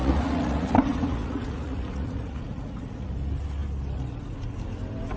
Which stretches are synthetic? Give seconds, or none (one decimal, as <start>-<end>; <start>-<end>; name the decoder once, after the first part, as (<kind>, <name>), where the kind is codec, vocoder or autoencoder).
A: 0.0-3.1 (vocoder, Vocos)